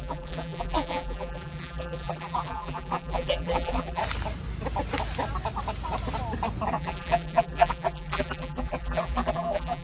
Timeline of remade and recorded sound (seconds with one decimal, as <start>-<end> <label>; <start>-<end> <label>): 0.0-4.0 remade; 4.0-6.7 recorded; 6.7-9.8 remade